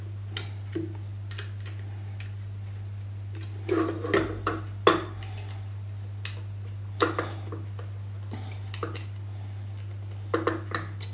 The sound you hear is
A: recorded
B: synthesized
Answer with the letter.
A